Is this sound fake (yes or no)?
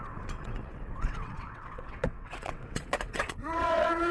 yes